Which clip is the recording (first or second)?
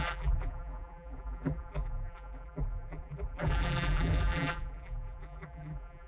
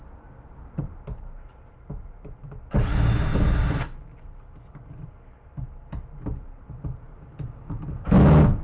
second